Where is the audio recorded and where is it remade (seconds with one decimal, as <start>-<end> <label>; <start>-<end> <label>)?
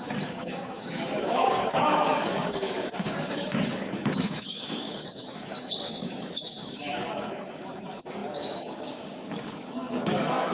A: 0.0-10.5 remade